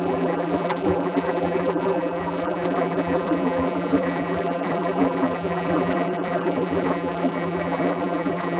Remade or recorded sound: remade